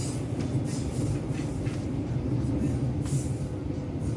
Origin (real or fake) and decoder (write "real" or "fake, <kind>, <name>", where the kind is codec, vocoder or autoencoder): real